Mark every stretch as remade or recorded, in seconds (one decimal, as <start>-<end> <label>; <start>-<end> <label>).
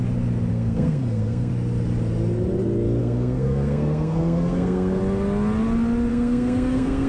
0.0-0.5 recorded; 0.5-1.5 remade; 1.5-3.0 recorded; 3.0-5.0 remade; 5.0-6.1 recorded; 6.1-7.1 remade